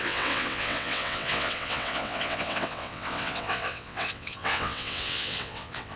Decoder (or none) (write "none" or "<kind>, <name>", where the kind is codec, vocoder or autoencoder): vocoder, WaveNeXt